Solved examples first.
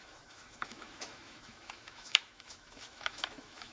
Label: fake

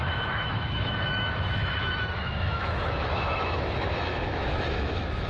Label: fake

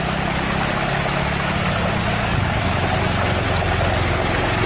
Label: real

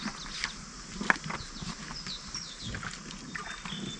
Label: real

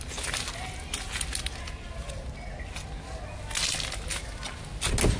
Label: real